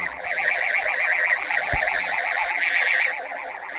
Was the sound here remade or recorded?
remade